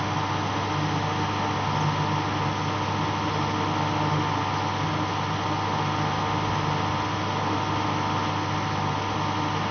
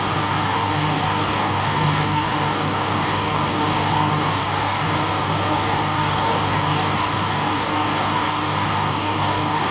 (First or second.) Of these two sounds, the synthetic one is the second